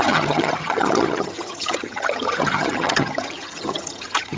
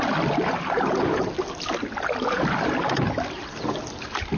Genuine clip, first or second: second